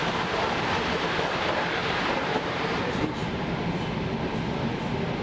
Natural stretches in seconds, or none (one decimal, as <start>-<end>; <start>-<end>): 1.4-1.8; 3.6-5.2